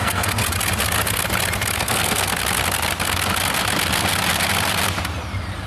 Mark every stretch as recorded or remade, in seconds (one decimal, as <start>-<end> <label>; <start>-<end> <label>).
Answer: 0.0-0.4 remade; 0.4-1.8 recorded; 1.8-2.3 remade; 2.3-5.7 recorded